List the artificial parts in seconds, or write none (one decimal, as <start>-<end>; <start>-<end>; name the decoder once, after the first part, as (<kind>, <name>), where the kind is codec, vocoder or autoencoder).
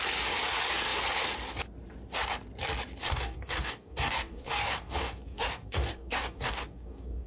3.0-7.3 (codec, DAC)